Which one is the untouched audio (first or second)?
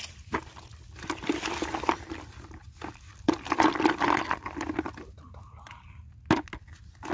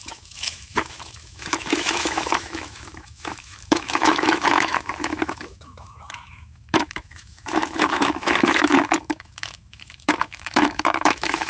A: first